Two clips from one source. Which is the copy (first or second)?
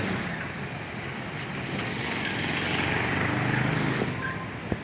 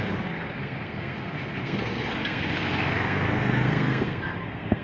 second